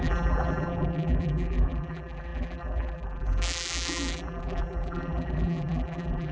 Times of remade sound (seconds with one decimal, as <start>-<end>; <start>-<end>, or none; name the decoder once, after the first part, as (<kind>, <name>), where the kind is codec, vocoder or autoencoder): 0.0-6.3 (vocoder, BigVGAN v2)